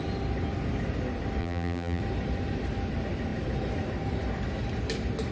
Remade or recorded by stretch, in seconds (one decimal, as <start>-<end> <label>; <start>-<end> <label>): 0.0-1.4 recorded; 1.4-2.0 remade; 2.0-5.3 recorded